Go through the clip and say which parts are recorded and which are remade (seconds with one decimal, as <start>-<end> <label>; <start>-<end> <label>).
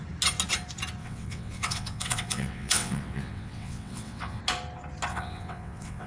0.0-1.0 recorded; 1.0-4.4 remade; 4.4-5.1 recorded; 5.1-6.1 remade